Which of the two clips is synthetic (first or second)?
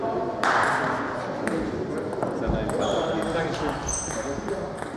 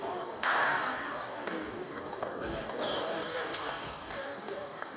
second